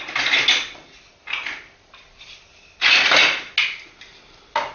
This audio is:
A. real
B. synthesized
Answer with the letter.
A